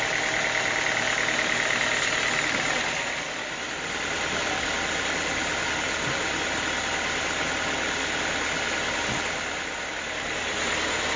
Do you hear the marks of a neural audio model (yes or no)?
no